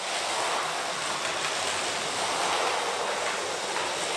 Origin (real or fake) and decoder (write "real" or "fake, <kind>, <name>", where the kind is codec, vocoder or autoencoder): real